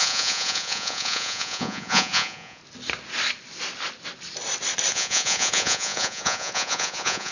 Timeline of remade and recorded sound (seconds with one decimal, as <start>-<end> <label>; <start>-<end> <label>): 0.0-2.6 remade; 2.6-4.9 recorded; 4.9-7.3 remade